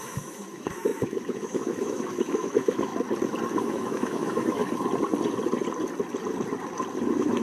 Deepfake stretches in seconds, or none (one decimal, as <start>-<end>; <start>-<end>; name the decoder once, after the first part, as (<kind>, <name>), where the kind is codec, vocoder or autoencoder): 0.0-2.9 (autoencoder, DAC-VAE); 3.6-4.6; 7.0-7.4